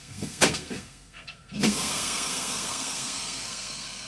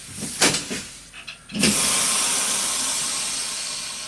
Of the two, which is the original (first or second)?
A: second